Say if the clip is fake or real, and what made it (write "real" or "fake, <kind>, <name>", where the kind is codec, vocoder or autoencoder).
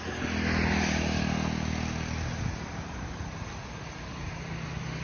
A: real